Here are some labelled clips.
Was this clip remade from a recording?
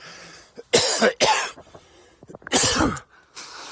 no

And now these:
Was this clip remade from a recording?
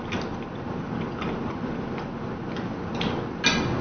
no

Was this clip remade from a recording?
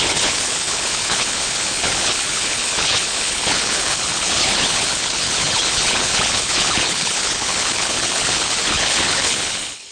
yes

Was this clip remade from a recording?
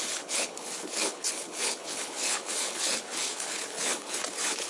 yes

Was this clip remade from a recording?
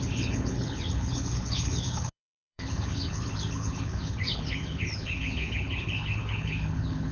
yes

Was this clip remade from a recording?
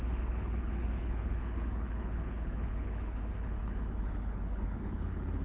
yes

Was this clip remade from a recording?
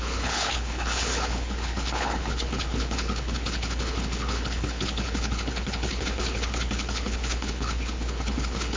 yes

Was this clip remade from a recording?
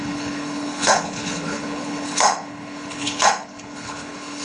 yes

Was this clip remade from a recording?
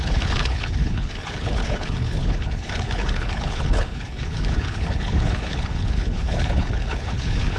yes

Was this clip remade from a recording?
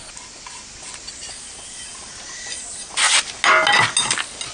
no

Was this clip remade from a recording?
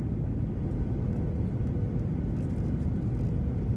no